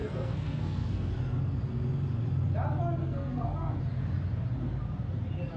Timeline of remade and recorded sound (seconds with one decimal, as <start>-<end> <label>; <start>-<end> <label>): 0.0-1.1 remade; 1.1-3.0 recorded; 3.0-3.8 remade; 3.8-5.6 recorded

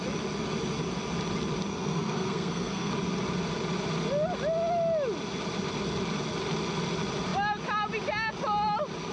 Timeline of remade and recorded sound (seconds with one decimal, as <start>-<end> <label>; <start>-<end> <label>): 0.0-1.7 recorded; 1.7-2.9 remade; 2.9-9.1 recorded